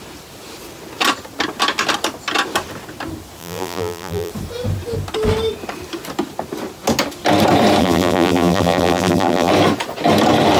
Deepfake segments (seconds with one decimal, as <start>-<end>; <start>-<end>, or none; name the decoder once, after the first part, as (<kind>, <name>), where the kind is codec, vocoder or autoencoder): 3.4-4.3 (vocoder, BigVGAN v2); 7.8-9.5